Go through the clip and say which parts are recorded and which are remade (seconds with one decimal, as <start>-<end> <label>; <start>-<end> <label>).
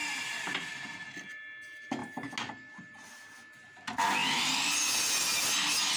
0.0-6.0 recorded